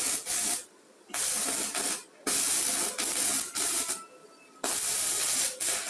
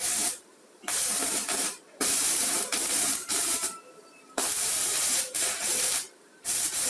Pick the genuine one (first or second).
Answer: first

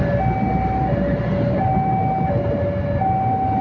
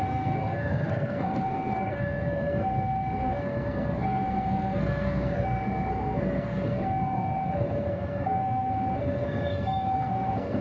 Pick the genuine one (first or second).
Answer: first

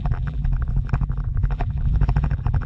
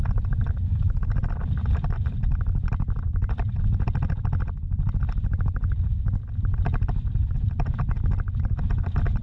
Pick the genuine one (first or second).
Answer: second